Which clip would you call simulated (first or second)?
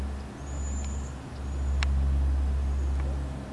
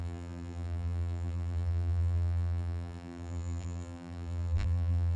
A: second